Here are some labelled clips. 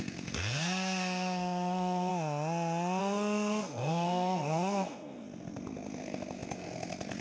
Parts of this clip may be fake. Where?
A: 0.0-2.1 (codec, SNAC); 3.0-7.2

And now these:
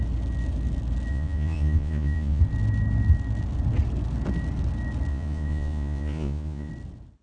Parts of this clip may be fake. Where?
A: 1.1-2.4 (vocoder, Vocos); 5.1-6.7

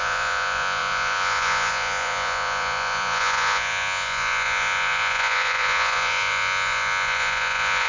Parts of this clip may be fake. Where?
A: 0.0-7.9 (vocoder, Vocos)

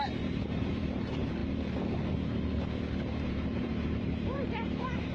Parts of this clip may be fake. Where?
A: 0.0-1.4 (vocoder, BigVGAN v2); 3.3-5.1